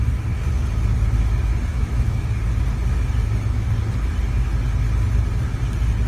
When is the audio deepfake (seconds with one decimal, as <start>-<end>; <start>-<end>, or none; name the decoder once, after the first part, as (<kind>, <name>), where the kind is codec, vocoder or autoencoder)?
1.7-2.2 (autoencoder, DAC-VAE); 3.2-3.7